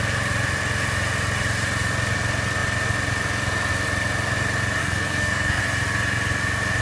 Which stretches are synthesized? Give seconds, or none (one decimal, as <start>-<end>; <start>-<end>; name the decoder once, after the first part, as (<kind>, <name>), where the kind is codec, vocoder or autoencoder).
4.8-5.6 (codec, SNAC)